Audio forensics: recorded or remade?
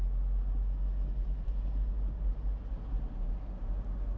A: recorded